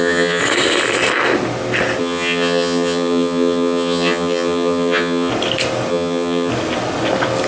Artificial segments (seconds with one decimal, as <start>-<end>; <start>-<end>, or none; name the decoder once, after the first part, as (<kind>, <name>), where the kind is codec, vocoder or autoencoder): 0.0-0.4 (vocoder, HiFi-GAN); 2.0-5.3; 5.9-6.5